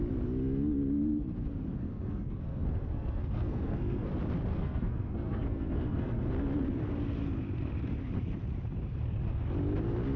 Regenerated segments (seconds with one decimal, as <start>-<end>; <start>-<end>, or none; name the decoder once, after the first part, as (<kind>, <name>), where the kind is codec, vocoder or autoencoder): 1.8-4.1 (codec, SNAC); 4.5-6.3